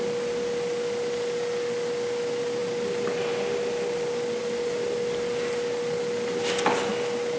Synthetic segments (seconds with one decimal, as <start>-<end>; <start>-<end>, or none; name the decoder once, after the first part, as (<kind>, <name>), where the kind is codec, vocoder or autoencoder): none